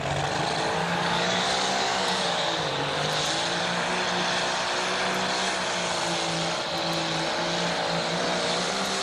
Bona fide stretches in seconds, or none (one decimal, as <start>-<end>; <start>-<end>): 0.0-0.8; 2.7-9.0